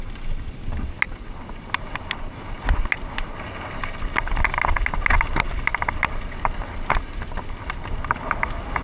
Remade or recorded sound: recorded